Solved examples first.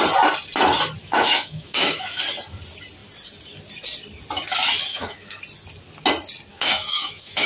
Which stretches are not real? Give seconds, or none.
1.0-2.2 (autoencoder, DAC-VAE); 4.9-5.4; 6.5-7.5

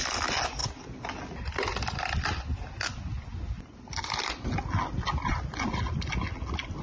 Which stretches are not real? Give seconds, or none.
none